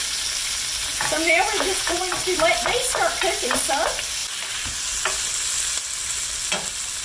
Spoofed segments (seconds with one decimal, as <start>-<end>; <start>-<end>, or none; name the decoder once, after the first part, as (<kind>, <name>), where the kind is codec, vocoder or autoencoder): 0.9-2.0 (vocoder, Vocos)